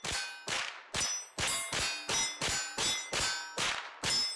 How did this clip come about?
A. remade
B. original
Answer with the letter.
B